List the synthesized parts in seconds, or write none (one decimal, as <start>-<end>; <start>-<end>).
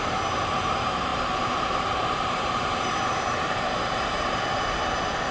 0.0-5.3